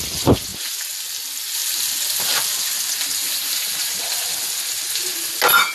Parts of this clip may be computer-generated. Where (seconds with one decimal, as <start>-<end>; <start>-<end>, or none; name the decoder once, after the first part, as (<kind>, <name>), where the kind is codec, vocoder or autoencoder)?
3.4-4.1 (vocoder, BigVGAN v2)